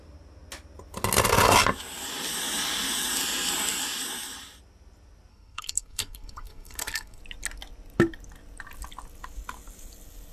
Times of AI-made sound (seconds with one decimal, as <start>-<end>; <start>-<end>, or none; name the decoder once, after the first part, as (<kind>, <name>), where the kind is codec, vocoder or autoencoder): 5.3-7.2 (codec, SNAC)